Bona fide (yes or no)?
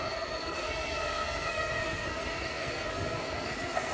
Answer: no